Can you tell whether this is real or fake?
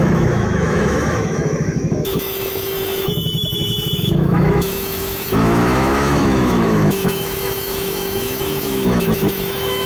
fake